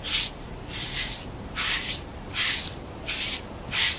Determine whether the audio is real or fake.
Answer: real